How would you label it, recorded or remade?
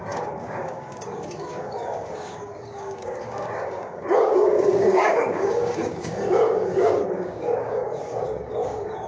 remade